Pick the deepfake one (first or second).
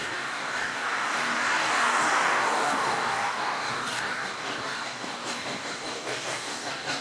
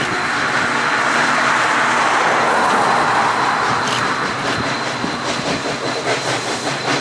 first